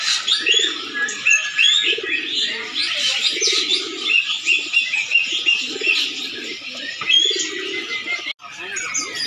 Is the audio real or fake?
real